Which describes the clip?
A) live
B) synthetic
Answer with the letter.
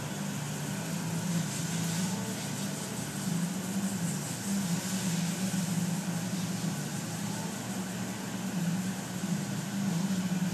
A